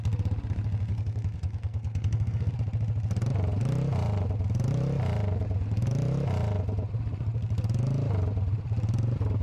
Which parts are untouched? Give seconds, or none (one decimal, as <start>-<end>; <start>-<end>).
0.0-0.9; 2.5-9.4